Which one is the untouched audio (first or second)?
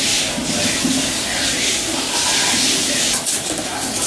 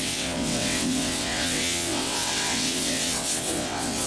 first